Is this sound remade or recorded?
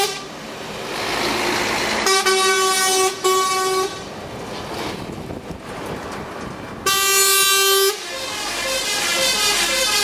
recorded